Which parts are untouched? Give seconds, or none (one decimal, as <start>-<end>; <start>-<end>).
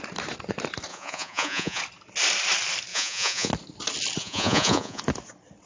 0.0-0.9; 1.8-2.9; 3.5-4.2; 5.0-5.7